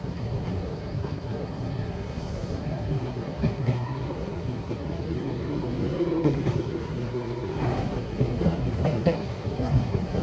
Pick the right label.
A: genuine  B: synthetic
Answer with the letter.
B